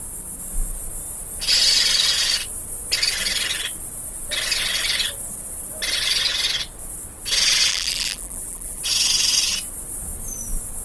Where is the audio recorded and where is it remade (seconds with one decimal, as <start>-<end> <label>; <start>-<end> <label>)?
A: 0.0-7.7 recorded; 7.7-8.8 remade; 8.8-10.8 recorded